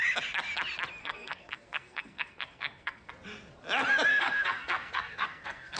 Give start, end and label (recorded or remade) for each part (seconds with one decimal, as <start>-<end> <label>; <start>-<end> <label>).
0.0-1.0 recorded; 1.0-3.1 remade; 3.1-4.1 recorded; 4.1-5.8 remade